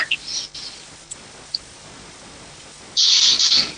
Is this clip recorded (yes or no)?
yes